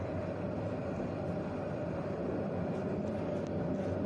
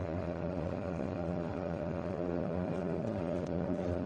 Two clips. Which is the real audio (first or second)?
first